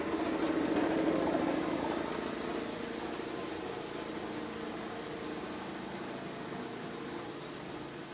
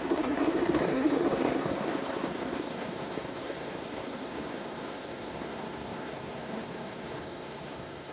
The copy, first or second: second